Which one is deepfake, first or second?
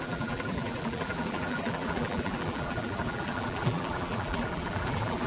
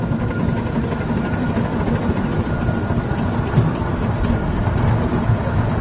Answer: first